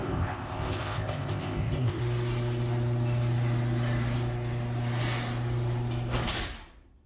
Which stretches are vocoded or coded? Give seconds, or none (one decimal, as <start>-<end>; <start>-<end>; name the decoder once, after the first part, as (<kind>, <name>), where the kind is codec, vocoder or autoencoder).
0.0-2.0 (codec, ZipCodec)

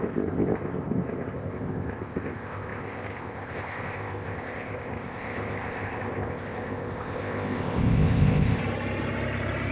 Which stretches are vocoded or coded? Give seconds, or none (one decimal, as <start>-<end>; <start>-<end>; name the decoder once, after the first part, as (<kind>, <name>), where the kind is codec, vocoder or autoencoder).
0.0-8.6 (codec, ZipCodec)

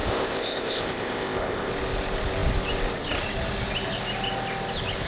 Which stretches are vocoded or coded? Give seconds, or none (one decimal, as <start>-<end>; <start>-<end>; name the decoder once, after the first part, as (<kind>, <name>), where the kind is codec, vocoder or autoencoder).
0.0-1.7 (codec, ZipCodec)

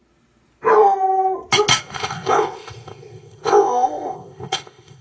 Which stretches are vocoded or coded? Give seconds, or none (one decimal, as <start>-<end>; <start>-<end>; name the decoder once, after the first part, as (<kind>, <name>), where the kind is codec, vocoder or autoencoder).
1.8-5.0 (codec, ZipCodec)

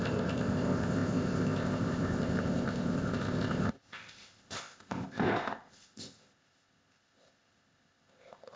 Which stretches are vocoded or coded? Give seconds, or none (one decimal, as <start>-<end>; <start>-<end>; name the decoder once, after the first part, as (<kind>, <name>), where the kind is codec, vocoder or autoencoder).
0.0-8.6 (codec, ZipCodec)

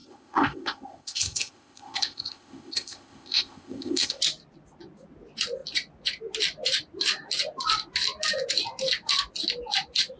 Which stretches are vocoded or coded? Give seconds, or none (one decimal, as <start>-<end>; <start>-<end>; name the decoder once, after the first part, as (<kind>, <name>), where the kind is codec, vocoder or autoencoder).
0.0-4.2 (codec, ZipCodec)

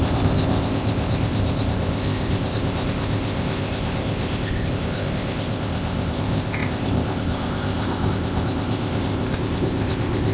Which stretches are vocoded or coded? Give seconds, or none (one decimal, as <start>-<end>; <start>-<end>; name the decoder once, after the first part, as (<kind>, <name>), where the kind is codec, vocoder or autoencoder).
0.0-10.3 (codec, ZipCodec)

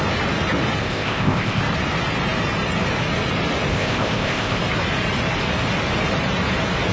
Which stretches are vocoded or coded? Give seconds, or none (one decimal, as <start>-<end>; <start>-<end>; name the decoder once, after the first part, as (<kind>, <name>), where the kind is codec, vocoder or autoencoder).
0.8-1.6 (codec, ZipCodec); 3.7-4.6